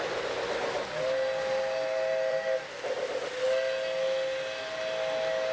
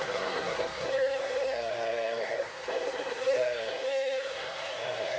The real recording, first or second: first